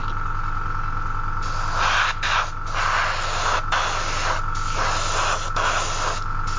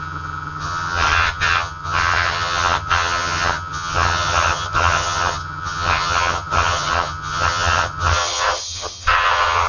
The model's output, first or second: second